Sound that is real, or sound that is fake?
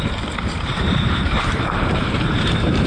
fake